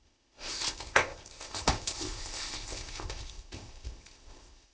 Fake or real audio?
fake